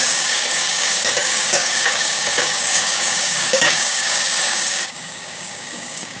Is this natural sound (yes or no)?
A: no